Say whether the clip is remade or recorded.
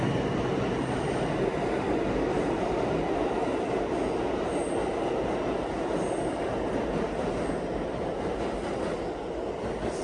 recorded